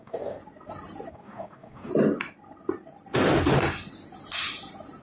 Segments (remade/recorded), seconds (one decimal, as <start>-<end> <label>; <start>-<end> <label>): 0.0-0.4 remade; 0.4-1.1 recorded; 1.1-1.9 remade; 1.9-5.0 recorded